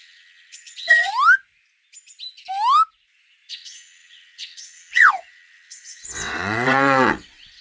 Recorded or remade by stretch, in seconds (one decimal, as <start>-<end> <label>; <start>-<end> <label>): 0.0-1.1 remade; 1.1-3.5 recorded; 3.5-7.6 remade